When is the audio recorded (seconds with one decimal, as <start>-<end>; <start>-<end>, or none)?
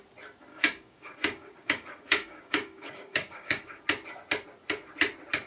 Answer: 0.0-0.5; 3.8-5.5